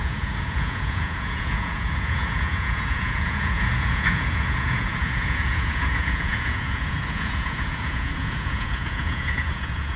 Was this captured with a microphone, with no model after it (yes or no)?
no